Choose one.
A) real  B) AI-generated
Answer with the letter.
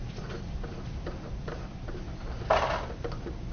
A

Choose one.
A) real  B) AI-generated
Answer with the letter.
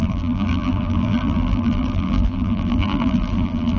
B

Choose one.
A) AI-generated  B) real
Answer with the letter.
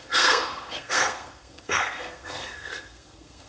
A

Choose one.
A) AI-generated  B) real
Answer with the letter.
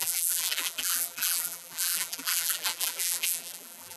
A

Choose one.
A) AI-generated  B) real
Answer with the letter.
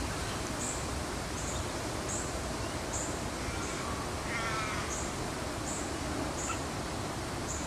B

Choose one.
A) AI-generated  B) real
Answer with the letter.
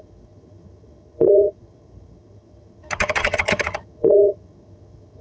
A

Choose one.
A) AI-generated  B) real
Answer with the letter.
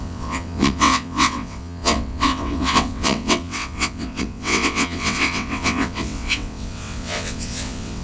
A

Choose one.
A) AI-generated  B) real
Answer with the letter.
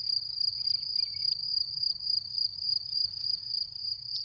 B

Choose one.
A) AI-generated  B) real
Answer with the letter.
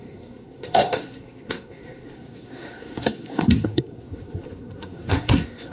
A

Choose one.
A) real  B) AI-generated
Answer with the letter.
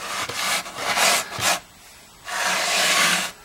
A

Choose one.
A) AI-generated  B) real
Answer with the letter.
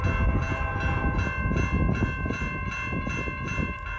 B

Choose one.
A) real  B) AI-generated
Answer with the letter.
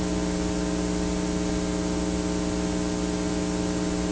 A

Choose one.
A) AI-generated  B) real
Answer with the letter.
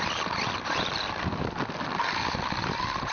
B